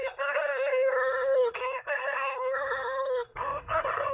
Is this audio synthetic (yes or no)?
yes